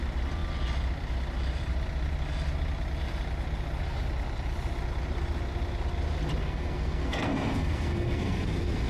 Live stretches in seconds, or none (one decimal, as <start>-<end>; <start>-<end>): 0.0-6.4